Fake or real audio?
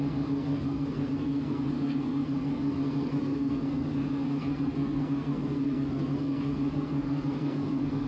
fake